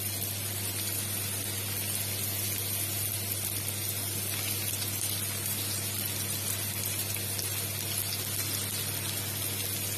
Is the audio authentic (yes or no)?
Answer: yes